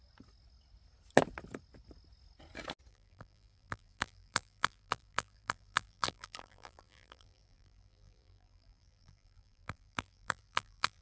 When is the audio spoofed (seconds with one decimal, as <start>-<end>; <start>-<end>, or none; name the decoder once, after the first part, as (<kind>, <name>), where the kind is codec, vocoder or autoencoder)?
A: 2.9-11.0 (vocoder, BigVGAN v2)